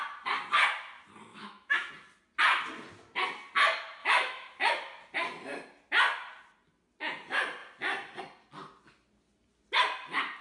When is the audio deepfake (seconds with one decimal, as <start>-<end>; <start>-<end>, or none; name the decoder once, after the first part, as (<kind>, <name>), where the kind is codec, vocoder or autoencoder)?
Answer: 1.3-1.9 (autoencoder, DAC-VAE); 4.0-4.7